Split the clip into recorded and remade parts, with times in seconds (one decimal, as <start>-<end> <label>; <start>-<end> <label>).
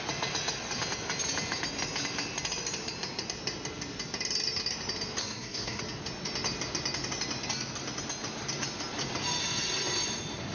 0.0-5.2 recorded; 5.2-5.8 remade; 5.8-10.5 recorded